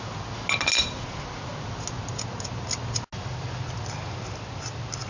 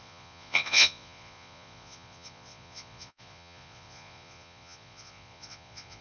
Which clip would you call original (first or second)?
first